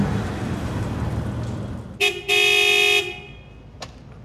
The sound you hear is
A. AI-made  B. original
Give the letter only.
B